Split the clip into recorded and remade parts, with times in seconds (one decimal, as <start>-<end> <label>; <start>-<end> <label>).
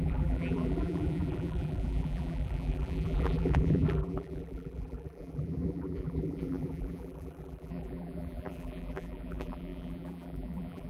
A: 0.0-10.9 remade